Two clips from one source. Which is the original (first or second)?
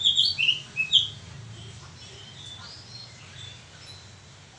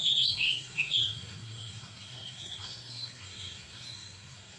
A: first